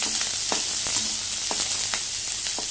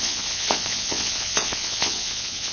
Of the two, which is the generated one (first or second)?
second